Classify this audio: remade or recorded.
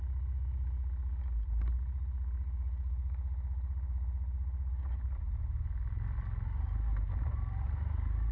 recorded